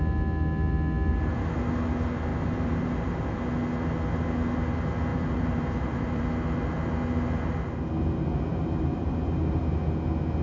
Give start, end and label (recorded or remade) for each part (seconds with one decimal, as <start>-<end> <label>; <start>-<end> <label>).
0.0-2.3 recorded; 2.3-3.4 remade; 3.4-5.1 recorded; 5.1-6.2 remade; 6.2-8.5 recorded; 8.5-9.6 remade; 9.6-10.4 recorded